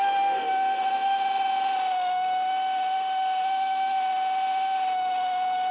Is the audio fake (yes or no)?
yes